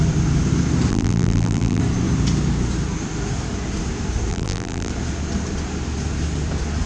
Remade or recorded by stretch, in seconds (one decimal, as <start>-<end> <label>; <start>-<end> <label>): 0.0-0.9 recorded; 0.9-1.8 remade; 1.8-4.3 recorded; 4.3-4.9 remade; 4.9-6.9 recorded

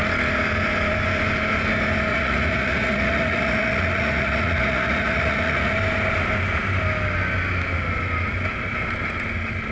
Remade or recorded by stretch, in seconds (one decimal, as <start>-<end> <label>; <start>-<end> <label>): 0.0-2.1 recorded; 2.1-5.7 remade; 5.7-9.7 recorded

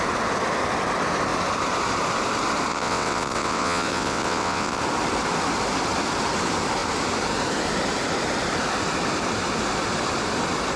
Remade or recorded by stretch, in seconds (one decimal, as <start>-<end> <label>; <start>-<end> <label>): 0.0-2.7 recorded; 2.7-4.8 remade; 4.8-10.8 recorded